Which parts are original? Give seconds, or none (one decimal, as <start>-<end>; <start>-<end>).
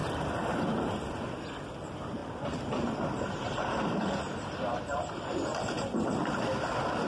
1.3-2.2; 6.4-7.1